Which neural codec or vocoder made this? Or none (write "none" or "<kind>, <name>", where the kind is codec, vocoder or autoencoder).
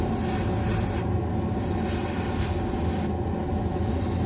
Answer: none